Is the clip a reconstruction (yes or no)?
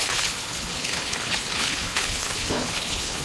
yes